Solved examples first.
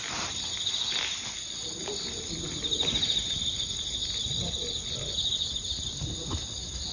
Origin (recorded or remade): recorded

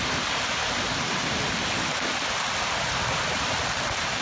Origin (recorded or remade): recorded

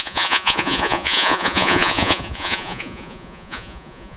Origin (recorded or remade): remade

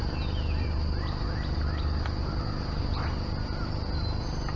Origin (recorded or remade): recorded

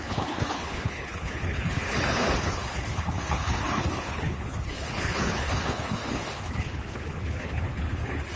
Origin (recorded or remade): remade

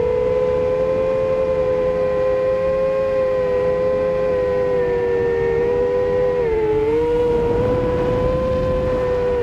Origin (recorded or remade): recorded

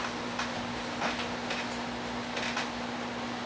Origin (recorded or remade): recorded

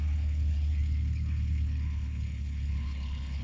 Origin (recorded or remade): remade